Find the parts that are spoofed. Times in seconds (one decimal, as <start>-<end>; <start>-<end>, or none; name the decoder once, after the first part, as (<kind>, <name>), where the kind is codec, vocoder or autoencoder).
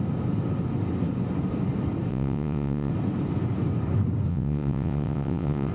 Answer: 2.1-2.9 (vocoder, WaveNeXt); 4.3-5.7